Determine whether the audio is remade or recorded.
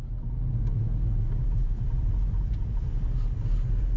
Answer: recorded